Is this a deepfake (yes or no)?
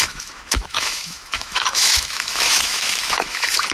yes